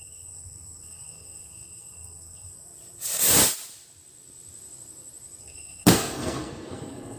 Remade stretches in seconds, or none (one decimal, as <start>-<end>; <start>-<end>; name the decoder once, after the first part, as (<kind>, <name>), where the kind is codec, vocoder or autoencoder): 0.0-2.5 (codec, SNAC); 5.4-7.2